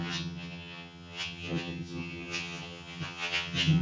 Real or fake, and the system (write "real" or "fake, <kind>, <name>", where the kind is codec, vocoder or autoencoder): fake, vocoder, HiFi-GAN